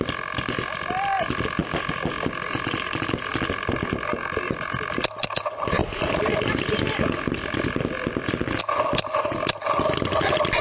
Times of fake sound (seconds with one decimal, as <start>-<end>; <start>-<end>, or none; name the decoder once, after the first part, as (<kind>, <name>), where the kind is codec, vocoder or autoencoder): 1.6-2.3 (vocoder, BigVGAN v2); 3.3-5.0; 5.8-8.6